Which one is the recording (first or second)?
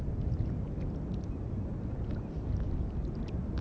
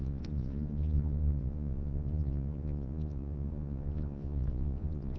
first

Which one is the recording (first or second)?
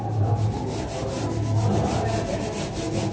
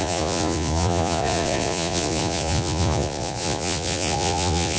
first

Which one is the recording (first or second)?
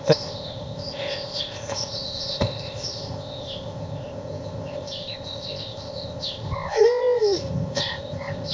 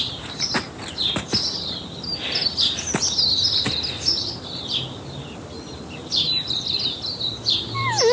second